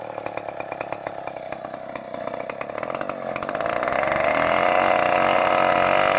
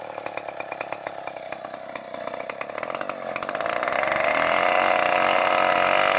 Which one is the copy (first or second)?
second